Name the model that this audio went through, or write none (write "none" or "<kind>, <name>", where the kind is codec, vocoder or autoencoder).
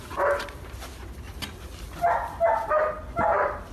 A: none